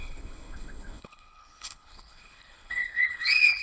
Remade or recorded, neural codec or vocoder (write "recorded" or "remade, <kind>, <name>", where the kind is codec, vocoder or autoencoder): remade, codec, HILCodec